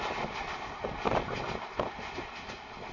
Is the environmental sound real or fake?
real